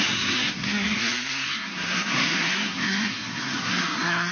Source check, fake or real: fake